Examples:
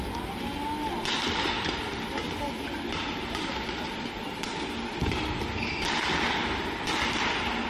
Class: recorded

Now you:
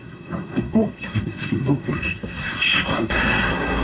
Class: remade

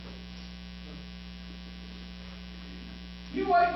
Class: recorded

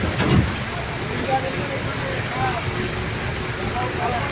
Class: recorded